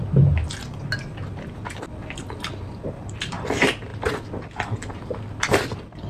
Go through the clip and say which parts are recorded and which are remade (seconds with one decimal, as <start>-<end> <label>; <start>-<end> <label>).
0.0-6.1 recorded